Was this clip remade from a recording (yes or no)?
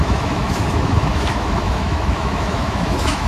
yes